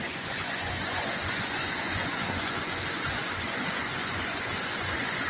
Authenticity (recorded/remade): remade